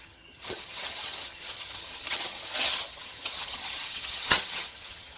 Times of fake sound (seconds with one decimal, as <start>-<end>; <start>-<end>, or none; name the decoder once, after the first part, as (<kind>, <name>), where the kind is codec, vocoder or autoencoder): 0.0-5.2 (vocoder, HiFi-GAN)